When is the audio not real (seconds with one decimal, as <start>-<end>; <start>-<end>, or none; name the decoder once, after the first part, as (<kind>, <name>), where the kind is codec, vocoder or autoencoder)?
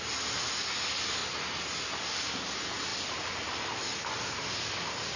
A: 2.9-3.9 (vocoder, BigVGAN v2)